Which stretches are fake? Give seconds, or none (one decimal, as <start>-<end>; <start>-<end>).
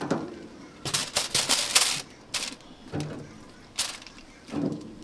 0.0-1.0; 4.0-5.0